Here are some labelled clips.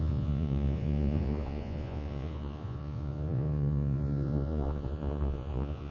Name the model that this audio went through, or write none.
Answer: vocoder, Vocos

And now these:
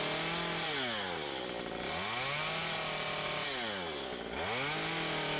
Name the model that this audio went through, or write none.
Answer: none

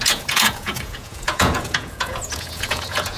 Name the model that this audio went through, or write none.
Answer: vocoder, Vocos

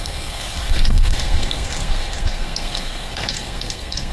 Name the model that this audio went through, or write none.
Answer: codec, SNAC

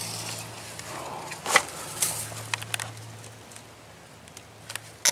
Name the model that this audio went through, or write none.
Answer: none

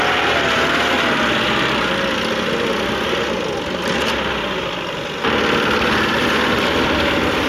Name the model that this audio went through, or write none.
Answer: none